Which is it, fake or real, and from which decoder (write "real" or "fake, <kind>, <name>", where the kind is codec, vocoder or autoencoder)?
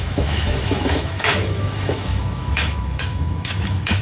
fake, autoencoder, DAC-VAE